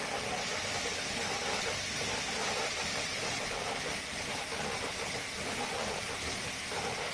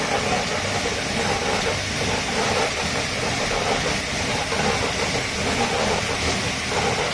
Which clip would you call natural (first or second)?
second